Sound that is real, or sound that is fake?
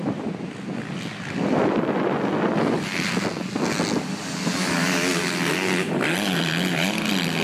real